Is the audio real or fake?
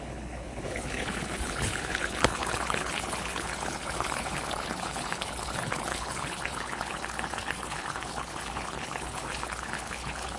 fake